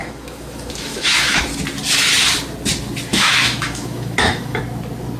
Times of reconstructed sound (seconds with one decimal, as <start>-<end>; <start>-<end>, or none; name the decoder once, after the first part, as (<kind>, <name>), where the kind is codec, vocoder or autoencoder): 0.0-1.4 (autoencoder, DAC-VAE); 3.1-4.6